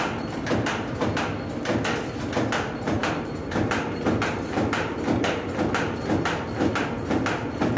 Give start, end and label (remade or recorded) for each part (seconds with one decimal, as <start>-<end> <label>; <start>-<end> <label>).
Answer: 0.0-7.8 recorded